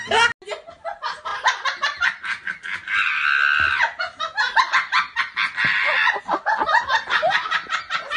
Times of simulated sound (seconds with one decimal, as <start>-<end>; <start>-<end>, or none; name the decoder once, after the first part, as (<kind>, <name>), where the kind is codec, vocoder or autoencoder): none